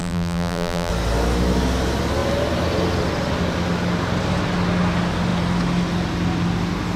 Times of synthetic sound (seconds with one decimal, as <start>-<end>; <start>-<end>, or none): 0.0-0.9